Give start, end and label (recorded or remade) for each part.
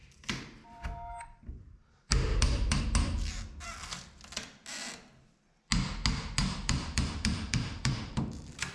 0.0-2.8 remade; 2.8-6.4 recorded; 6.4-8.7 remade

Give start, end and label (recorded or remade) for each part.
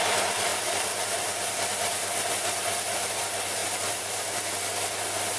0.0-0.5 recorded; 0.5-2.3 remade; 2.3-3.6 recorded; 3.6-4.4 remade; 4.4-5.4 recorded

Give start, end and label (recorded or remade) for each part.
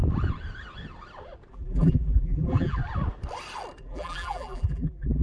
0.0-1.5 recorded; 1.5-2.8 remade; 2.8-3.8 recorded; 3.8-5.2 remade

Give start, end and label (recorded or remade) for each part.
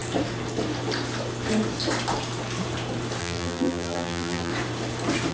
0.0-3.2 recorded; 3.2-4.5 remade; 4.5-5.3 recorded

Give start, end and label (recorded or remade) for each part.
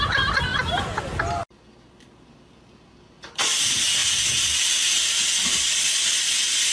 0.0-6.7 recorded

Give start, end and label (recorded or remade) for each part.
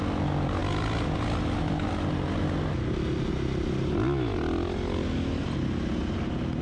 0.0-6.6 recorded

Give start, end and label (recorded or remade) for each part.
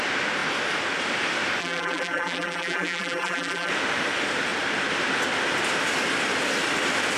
0.0-1.6 recorded; 1.6-3.7 remade; 3.7-7.2 recorded